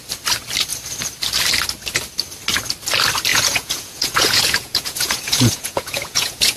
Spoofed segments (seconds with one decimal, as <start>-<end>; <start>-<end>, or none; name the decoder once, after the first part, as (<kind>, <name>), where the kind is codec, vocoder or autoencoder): 3.3-6.6 (vocoder, Vocos)